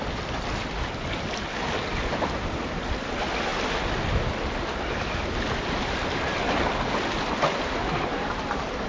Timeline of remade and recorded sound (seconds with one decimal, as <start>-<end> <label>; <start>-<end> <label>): 0.0-8.9 recorded